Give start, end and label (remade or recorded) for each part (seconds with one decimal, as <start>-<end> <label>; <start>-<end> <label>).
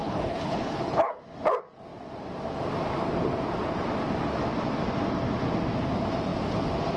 0.0-1.2 remade; 1.2-7.0 recorded